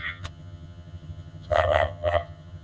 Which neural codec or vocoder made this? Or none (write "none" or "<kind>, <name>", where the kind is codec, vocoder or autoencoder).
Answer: vocoder, HiFi-GAN